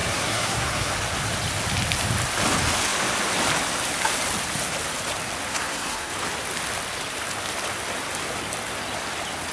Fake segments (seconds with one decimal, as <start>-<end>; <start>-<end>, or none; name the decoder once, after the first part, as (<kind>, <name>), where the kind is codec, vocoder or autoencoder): 0.0-0.9 (codec, SNAC); 5.5-6.1

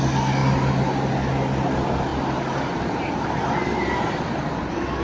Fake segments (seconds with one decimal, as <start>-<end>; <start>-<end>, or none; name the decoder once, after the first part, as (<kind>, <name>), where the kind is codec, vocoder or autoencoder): none

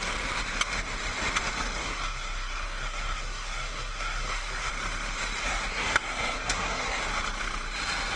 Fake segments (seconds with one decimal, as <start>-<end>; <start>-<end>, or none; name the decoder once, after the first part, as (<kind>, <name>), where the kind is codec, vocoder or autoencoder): 1.8-4.7 (codec, SNAC); 5.4-7.0

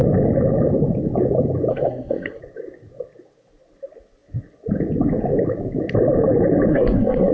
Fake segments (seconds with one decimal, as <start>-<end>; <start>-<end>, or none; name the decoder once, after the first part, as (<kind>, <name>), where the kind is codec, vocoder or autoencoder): 1.7-2.4 (codec, SNAC); 6.7-7.3